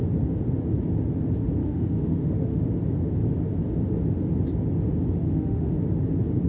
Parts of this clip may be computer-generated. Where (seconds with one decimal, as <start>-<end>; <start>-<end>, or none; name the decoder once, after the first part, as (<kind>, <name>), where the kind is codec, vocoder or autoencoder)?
1.6-2.6 (autoencoder, DAC-VAE); 5.2-5.8